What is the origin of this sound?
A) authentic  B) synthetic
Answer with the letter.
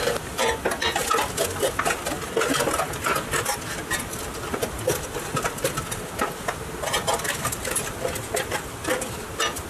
A